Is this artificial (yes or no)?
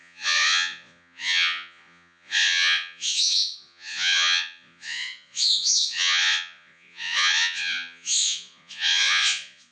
yes